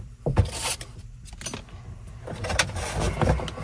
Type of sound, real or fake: real